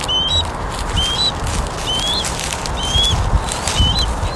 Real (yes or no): yes